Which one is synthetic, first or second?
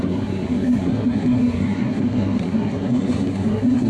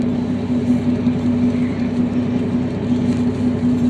first